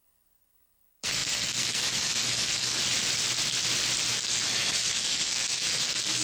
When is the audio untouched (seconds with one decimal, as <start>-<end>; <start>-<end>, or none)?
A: 2.8-4.1